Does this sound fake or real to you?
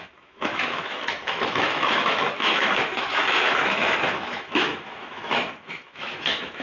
fake